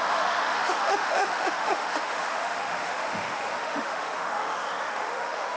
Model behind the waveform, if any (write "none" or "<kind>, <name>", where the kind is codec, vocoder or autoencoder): autoencoder, DAC-VAE